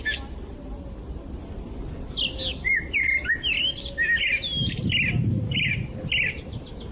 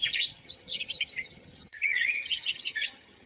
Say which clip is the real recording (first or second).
first